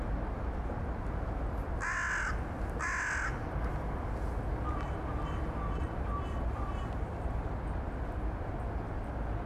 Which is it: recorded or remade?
recorded